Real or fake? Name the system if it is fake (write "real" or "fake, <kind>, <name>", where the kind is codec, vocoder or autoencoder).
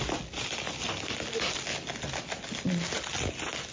real